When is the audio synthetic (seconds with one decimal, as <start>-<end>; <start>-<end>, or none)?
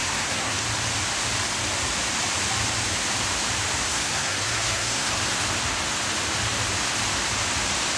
0.0-0.5; 3.9-5.2